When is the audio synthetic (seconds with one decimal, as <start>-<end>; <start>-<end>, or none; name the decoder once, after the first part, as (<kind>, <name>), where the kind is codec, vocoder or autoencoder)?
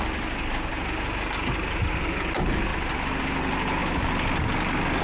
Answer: none